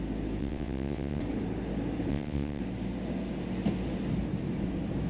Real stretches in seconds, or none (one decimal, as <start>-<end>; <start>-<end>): 0.0-0.4; 1.2-2.1; 2.6-5.1